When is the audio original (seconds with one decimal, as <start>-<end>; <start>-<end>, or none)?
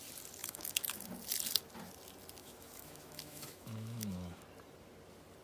0.0-0.4; 1.0-2.4; 4.4-5.4